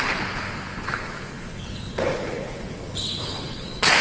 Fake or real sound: fake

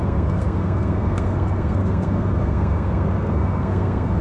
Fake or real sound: fake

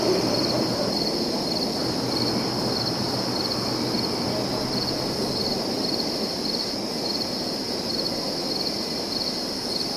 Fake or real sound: real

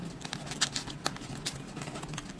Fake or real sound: real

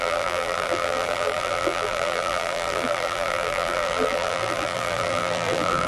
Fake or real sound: fake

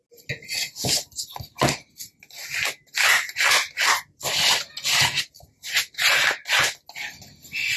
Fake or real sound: real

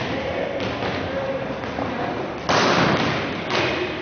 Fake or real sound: real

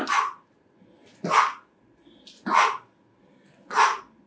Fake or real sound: real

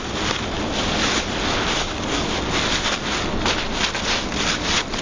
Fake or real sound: real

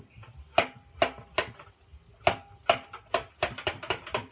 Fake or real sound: real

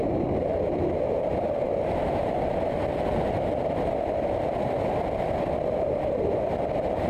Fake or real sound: real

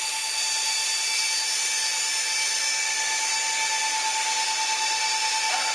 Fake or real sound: real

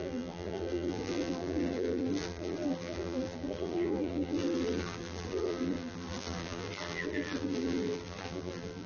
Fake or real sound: fake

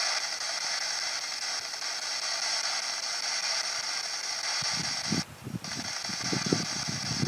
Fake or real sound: real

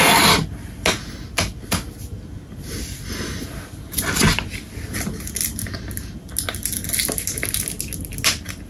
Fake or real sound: real